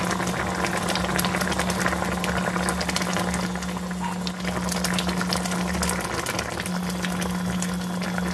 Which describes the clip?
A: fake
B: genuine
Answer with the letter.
B